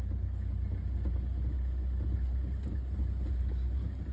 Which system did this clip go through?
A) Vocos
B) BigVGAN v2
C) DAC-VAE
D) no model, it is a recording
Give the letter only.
D